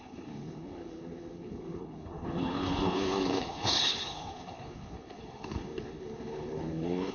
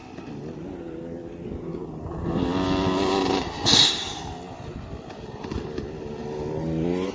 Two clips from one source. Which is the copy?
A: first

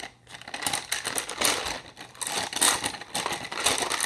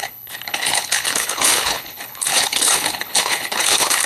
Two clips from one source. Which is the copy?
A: second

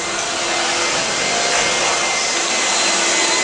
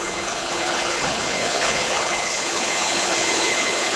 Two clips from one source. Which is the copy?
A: second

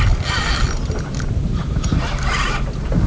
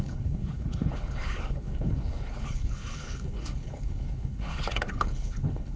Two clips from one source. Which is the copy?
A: second